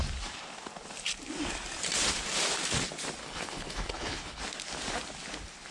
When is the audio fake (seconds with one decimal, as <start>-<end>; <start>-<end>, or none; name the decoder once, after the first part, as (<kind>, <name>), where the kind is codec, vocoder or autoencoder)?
3.2-4.4 (codec, HILCodec)